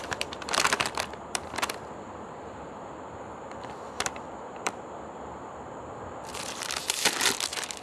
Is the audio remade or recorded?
remade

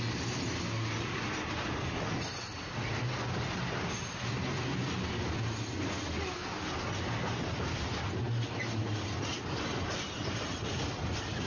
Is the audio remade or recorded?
recorded